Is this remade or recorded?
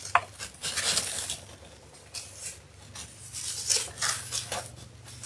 recorded